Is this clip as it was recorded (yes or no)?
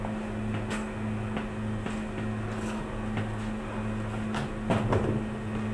yes